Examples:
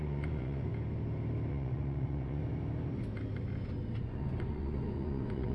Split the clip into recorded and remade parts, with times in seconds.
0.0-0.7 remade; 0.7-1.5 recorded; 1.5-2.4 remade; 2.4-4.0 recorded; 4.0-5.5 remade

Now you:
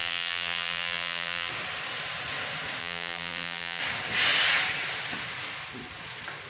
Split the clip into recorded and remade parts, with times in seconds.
0.0-1.5 remade; 1.5-2.8 recorded; 2.8-3.8 remade; 3.8-6.5 recorded